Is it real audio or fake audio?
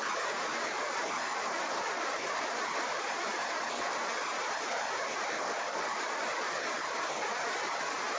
real